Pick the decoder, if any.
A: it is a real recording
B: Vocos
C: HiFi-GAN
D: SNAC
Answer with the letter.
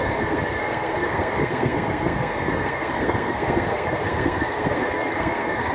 D